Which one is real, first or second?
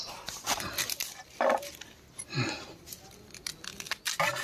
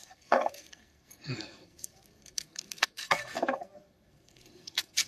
first